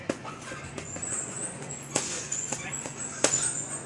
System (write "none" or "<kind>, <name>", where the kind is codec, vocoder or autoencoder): vocoder, Vocos